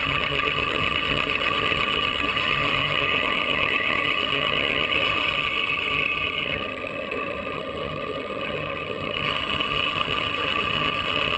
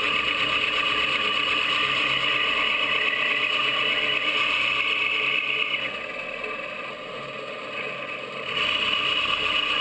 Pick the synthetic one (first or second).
first